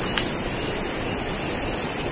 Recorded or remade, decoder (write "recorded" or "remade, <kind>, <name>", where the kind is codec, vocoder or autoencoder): recorded